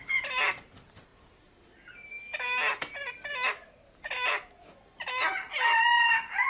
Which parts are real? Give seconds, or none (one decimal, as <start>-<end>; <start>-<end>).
0.0-6.5